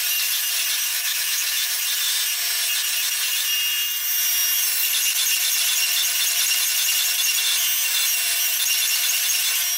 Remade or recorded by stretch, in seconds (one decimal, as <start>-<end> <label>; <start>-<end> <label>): 0.0-0.9 recorded; 0.9-1.7 remade; 1.7-9.8 recorded

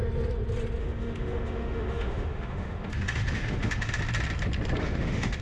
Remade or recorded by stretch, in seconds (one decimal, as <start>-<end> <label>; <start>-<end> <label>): 0.0-0.8 recorded; 0.8-4.0 remade; 4.0-4.8 recorded; 4.8-5.4 remade

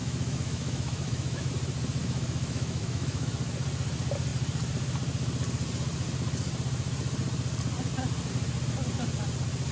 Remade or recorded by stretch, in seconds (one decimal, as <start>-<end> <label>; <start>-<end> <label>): 0.0-1.5 remade; 1.5-2.0 recorded; 2.0-3.3 remade; 3.3-9.7 recorded

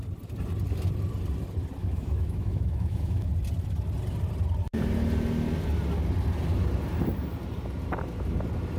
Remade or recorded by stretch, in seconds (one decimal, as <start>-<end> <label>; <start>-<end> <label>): 0.0-1.8 recorded; 1.8-3.3 remade; 3.3-8.8 recorded

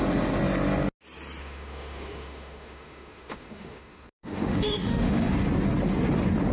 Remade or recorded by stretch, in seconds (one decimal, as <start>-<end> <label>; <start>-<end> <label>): 0.0-1.4 recorded; 1.4-5.3 remade; 5.3-6.5 recorded

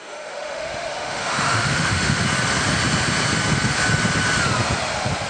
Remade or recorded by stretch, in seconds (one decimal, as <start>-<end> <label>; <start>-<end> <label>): 0.0-2.2 remade; 2.2-5.3 recorded